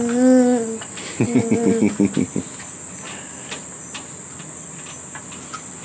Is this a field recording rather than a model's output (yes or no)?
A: yes